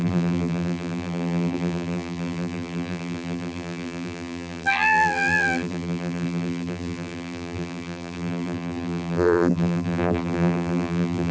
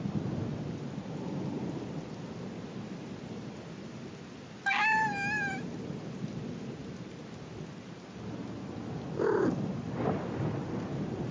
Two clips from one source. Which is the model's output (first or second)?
first